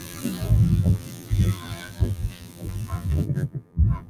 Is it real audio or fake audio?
fake